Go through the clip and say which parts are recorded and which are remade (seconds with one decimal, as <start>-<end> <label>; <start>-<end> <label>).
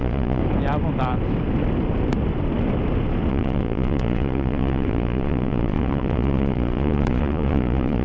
0.0-0.4 remade; 0.4-3.3 recorded; 3.3-8.0 remade